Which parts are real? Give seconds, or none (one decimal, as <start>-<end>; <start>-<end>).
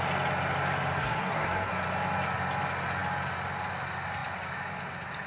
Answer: 0.0-1.0; 1.7-5.3